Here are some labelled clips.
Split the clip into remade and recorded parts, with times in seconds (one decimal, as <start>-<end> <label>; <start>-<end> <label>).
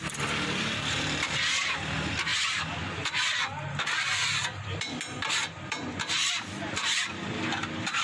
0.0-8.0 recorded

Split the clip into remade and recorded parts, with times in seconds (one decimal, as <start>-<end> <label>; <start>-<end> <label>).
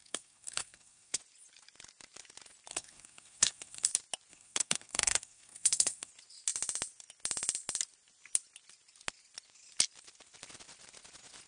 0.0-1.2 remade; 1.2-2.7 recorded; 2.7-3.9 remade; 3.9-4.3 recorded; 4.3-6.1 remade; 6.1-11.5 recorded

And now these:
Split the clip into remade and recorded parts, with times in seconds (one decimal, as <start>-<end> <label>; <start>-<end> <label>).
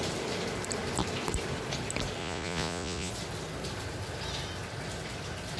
0.0-2.2 recorded; 2.2-3.1 remade; 3.1-5.6 recorded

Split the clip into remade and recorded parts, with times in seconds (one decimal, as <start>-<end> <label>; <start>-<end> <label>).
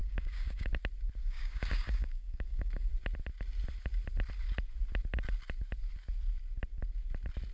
0.0-0.7 remade; 0.7-1.2 recorded; 1.2-2.9 remade; 2.9-7.5 recorded